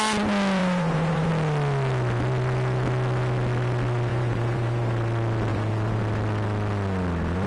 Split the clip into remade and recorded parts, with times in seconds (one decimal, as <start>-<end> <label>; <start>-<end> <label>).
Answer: 0.0-0.6 recorded; 0.6-1.3 remade; 1.3-4.1 recorded; 4.1-4.9 remade; 4.9-5.5 recorded; 5.5-6.0 remade; 6.0-7.5 recorded